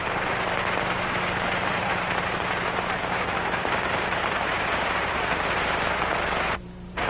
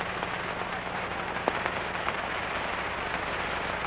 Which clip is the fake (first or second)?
first